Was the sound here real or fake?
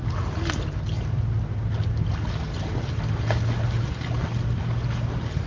real